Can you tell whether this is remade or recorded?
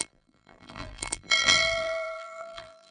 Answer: remade